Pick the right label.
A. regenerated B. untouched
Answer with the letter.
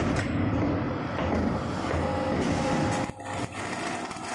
B